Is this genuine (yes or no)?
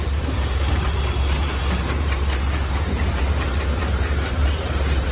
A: no